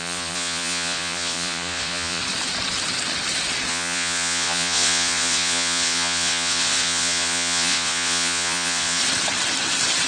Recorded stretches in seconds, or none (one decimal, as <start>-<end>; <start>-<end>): 2.2-3.7; 9.0-10.1